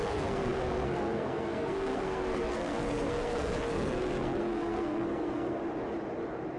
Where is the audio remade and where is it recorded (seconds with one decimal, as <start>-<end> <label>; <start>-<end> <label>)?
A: 0.0-5.6 remade; 5.6-6.6 recorded

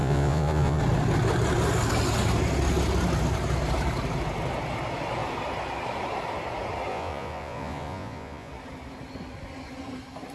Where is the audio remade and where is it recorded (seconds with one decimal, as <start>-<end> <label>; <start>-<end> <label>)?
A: 0.0-0.8 remade; 0.8-6.9 recorded; 6.9-8.5 remade; 8.5-10.3 recorded